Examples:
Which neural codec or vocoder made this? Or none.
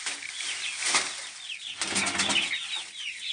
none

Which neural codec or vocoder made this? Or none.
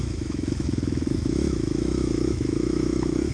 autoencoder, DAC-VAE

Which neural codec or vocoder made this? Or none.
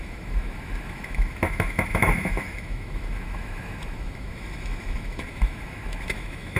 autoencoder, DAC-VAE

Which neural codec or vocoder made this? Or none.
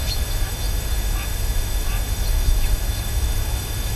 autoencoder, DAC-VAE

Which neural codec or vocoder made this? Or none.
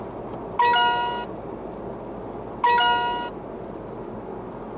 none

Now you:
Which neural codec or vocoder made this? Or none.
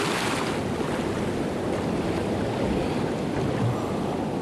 none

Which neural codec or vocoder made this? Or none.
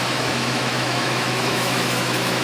autoencoder, DAC-VAE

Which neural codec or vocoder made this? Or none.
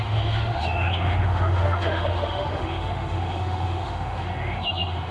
autoencoder, DAC-VAE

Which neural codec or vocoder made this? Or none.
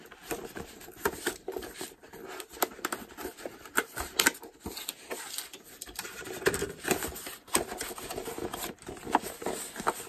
none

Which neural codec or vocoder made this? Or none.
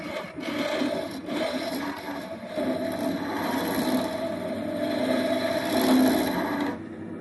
none